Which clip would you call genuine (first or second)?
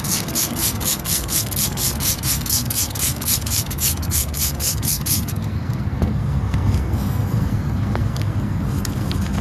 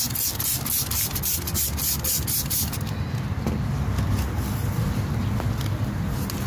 second